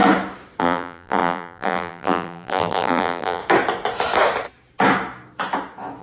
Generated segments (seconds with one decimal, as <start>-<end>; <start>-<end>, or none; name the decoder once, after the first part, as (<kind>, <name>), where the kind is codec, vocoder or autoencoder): 0.6-3.4 (vocoder, BigVGAN v2)